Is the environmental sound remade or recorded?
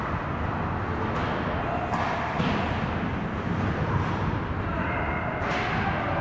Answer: recorded